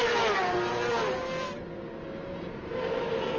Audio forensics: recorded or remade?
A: recorded